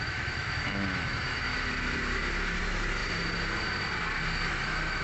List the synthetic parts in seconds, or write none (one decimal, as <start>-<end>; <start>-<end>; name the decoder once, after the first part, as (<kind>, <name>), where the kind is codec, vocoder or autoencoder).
0.0-1.5 (autoencoder, DAC-VAE); 2.6-3.0; 4.5-5.0